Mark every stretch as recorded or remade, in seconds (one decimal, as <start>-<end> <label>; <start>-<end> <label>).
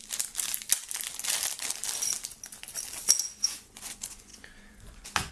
0.0-3.2 recorded; 3.2-5.3 remade